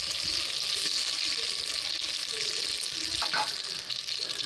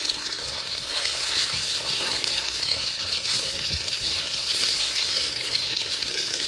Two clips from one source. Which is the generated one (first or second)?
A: second